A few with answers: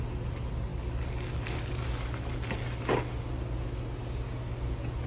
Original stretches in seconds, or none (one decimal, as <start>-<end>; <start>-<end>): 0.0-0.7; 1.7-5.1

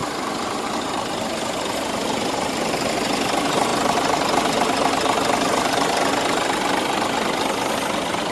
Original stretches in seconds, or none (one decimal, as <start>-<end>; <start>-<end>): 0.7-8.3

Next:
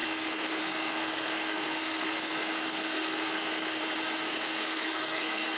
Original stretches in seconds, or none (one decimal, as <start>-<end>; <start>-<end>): 3.8-4.3